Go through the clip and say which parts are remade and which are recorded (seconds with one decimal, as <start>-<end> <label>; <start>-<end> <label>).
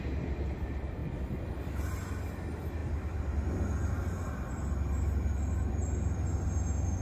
0.0-2.8 recorded; 2.8-3.3 remade; 3.3-7.0 recorded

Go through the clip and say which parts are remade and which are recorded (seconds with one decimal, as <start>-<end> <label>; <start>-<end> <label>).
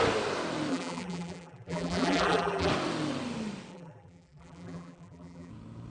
0.0-0.7 recorded; 0.7-2.7 remade; 2.7-3.7 recorded; 3.7-5.5 remade; 5.5-5.9 recorded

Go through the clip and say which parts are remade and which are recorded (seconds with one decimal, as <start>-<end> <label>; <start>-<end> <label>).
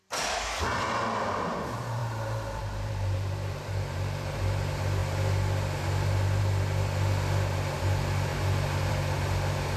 0.0-2.0 recorded; 2.0-4.4 remade; 4.4-9.8 recorded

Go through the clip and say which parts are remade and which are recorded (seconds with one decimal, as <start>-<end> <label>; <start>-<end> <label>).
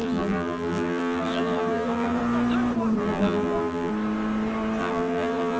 0.0-2.2 remade; 2.2-3.0 recorded; 3.0-3.9 remade; 3.9-4.8 recorded; 4.8-5.6 remade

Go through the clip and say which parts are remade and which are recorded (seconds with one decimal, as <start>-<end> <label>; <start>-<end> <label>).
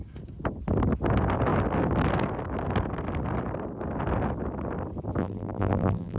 0.0-5.2 recorded; 5.2-6.2 remade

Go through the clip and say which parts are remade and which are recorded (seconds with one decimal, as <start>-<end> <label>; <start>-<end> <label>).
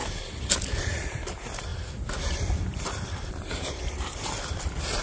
0.0-0.8 recorded; 0.8-5.0 remade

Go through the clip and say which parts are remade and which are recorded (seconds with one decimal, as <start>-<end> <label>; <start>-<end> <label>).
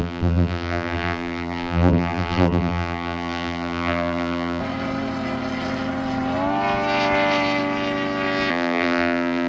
0.0-4.6 remade; 4.6-8.5 recorded; 8.5-9.5 remade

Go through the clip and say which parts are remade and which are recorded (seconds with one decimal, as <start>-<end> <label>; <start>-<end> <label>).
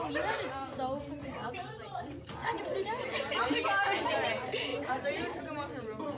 0.0-1.2 recorded; 1.2-3.8 remade; 3.8-4.7 recorded; 4.7-5.4 remade; 5.4-6.2 recorded